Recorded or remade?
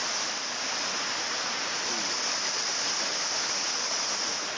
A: recorded